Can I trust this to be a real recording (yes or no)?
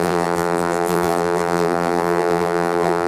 no